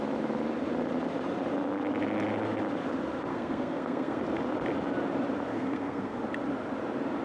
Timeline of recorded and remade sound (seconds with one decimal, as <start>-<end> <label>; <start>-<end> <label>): 0.0-3.3 recorded; 3.3-4.2 remade; 4.2-5.5 recorded; 5.5-6.2 remade; 6.2-7.2 recorded